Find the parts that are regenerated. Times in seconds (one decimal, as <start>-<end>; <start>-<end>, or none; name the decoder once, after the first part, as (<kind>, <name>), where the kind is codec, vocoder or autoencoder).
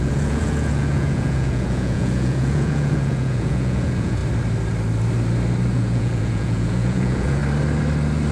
0.0-4.2 (vocoder, Vocos); 5.7-7.4